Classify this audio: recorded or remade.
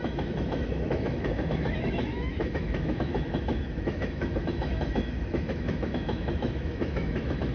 remade